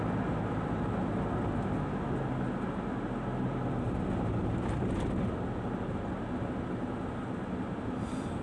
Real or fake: real